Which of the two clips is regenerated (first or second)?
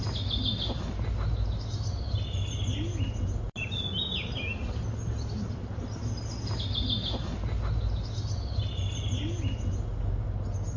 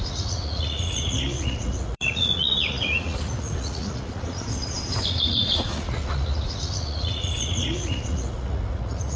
second